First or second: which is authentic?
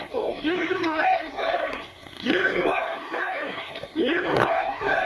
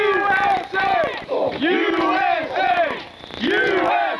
second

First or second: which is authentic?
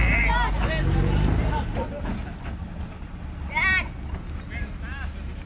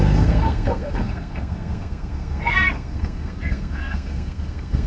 first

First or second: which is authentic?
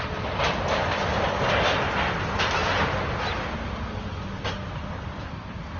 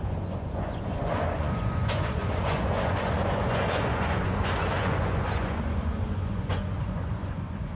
first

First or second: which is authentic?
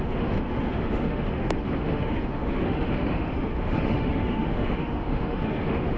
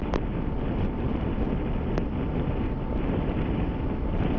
second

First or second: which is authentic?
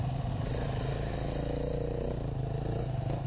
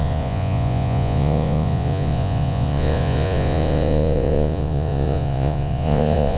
first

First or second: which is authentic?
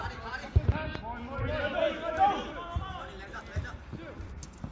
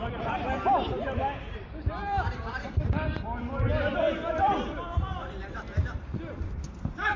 first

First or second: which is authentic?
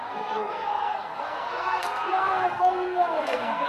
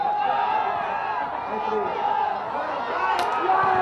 second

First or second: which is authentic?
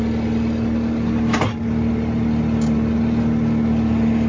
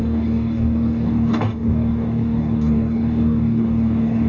first